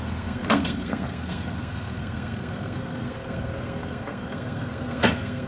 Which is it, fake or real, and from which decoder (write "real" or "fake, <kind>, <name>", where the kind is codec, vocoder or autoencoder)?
fake, codec, SNAC